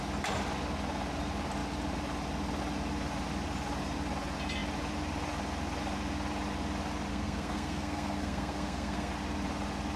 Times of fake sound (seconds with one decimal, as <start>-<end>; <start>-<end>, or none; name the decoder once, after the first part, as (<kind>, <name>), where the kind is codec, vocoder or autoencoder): 7.1-9.1 (codec, SNAC)